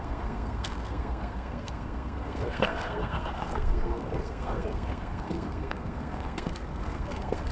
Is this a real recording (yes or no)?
no